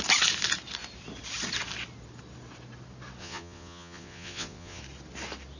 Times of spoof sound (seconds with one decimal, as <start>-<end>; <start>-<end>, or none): 3.2-4.8